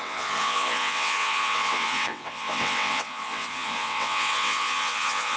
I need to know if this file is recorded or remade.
remade